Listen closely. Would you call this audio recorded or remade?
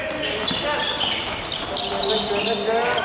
recorded